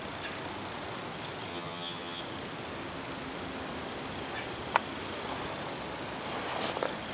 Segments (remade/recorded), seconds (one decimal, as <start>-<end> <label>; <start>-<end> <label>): 0.0-1.5 recorded; 1.5-2.2 remade; 2.2-7.1 recorded